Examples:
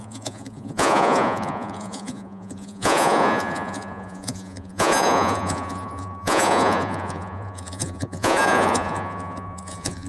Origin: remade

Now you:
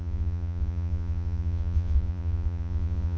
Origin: remade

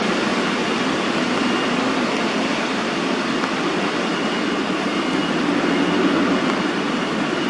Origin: recorded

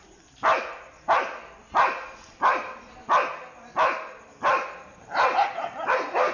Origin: recorded